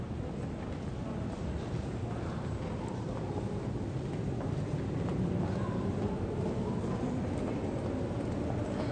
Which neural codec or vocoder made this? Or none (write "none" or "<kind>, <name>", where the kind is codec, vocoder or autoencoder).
none